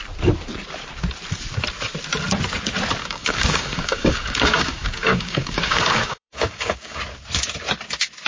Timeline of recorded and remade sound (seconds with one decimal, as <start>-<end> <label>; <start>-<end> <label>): 0.0-3.0 recorded; 3.0-7.0 remade; 7.0-8.3 recorded